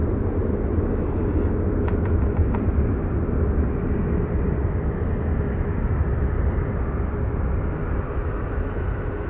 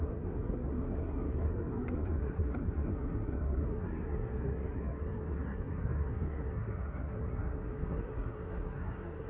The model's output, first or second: second